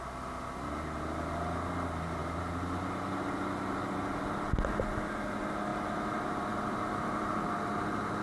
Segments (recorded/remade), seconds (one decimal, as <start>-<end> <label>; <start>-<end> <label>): 0.0-8.2 recorded